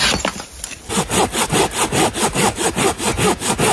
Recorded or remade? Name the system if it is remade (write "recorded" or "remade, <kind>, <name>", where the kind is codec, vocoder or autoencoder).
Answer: recorded